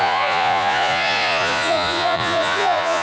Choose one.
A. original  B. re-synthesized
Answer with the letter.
B